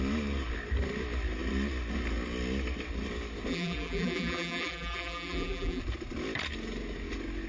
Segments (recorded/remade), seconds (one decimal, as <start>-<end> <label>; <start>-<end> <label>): 0.0-3.5 recorded; 3.5-5.8 remade; 5.8-7.5 recorded